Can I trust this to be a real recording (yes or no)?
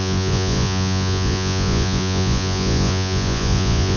no